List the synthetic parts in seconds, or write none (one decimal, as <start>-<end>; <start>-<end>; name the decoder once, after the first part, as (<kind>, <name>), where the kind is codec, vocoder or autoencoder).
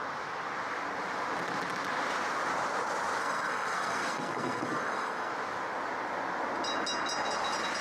3.2-5.3 (codec, SNAC)